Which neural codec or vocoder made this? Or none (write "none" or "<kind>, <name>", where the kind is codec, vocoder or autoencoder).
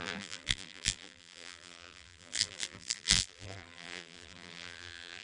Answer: vocoder, BigVGAN v2